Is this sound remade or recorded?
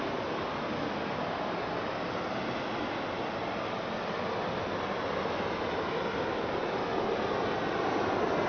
recorded